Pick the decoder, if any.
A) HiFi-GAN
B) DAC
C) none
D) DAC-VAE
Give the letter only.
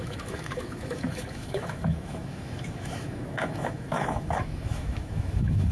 D